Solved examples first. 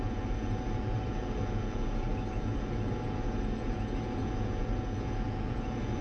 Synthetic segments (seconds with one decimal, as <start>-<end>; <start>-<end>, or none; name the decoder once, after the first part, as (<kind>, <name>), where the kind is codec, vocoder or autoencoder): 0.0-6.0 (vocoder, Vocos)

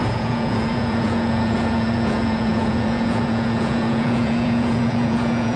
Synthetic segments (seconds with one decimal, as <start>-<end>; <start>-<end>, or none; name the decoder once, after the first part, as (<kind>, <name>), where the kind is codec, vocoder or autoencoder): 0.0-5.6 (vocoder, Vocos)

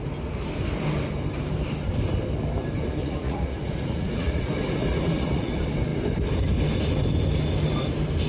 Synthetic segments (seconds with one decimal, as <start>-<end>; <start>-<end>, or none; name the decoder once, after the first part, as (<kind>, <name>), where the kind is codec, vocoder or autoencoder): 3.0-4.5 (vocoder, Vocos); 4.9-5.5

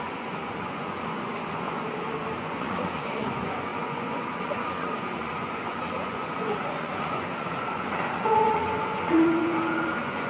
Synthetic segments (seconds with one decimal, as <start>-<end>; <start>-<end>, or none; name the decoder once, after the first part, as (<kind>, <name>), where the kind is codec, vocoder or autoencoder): 0.0-10.3 (vocoder, Vocos)

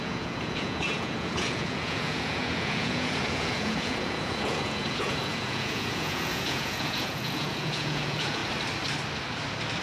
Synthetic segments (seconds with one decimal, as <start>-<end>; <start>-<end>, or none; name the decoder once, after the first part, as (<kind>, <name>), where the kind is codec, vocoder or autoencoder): 0.0-8.4 (vocoder, Vocos)

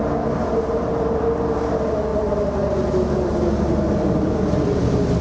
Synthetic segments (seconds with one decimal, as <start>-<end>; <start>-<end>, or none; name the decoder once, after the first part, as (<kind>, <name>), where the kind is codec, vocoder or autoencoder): none

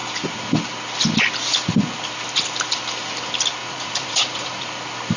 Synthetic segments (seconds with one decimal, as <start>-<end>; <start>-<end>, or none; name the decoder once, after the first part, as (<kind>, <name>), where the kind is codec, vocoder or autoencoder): 3.6-4.7 (vocoder, Vocos)

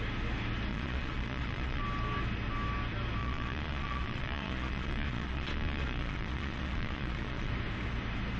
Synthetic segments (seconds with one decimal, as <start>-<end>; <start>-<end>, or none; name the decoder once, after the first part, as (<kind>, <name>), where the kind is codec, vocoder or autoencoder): 0.7-1.8 (vocoder, Vocos); 3.2-7.5